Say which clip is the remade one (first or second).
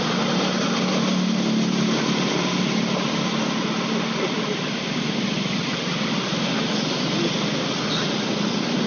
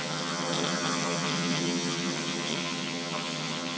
second